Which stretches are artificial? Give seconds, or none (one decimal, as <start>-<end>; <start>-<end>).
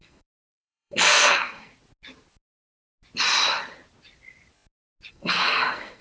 0.0-1.7; 5.1-6.0